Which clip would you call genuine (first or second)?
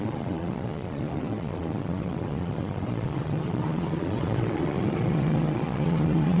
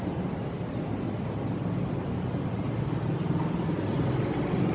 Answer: second